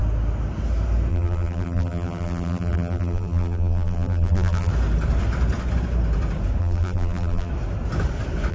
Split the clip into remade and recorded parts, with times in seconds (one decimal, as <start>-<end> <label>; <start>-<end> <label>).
0.0-1.1 recorded; 1.1-4.7 remade; 4.7-6.6 recorded; 6.6-7.5 remade; 7.5-8.5 recorded